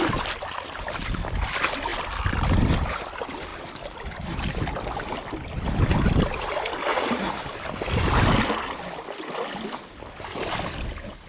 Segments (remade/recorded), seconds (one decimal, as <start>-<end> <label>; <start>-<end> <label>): 0.0-6.9 recorded; 6.9-7.4 remade; 7.4-11.3 recorded